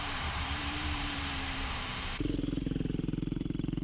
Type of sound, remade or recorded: remade